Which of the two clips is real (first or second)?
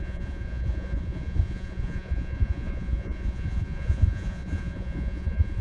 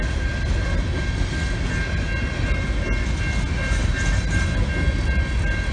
second